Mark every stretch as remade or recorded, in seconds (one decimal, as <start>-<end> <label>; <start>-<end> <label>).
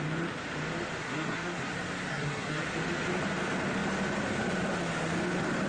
0.0-1.0 recorded; 1.0-1.7 remade; 1.7-2.1 recorded; 2.1-2.6 remade; 2.6-5.7 recorded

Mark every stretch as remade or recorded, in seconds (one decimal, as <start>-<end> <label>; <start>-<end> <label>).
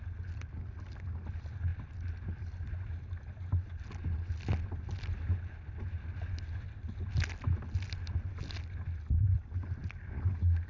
0.0-10.7 recorded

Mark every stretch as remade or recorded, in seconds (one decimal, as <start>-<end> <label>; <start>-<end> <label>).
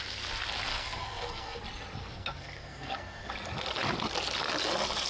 0.0-0.7 recorded; 0.7-1.6 remade; 1.6-2.0 recorded; 2.0-3.3 remade; 3.3-5.1 recorded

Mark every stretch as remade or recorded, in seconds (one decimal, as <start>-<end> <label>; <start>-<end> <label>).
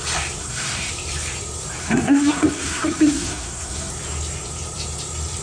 0.0-0.4 recorded; 0.4-0.9 remade; 0.9-1.8 recorded; 1.8-3.9 remade; 3.9-5.4 recorded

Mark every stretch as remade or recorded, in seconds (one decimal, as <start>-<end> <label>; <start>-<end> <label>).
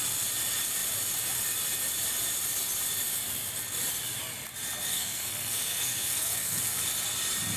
0.0-4.9 recorded; 4.9-6.8 remade; 6.8-7.6 recorded